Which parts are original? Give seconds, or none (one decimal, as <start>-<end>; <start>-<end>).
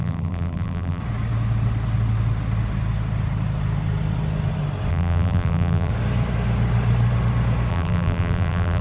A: 1.0-4.9; 5.9-7.7